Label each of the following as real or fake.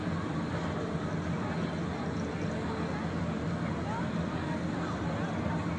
real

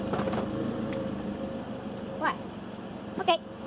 fake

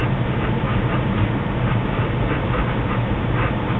real